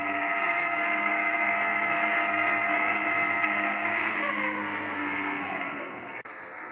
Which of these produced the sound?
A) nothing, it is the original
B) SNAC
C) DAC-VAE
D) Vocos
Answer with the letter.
B